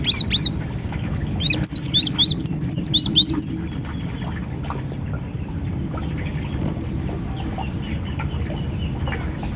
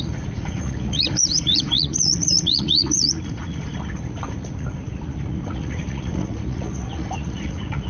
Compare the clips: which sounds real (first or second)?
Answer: first